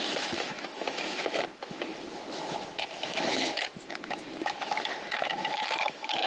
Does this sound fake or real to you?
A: fake